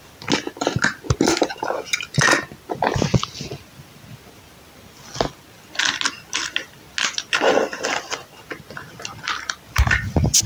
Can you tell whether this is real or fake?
real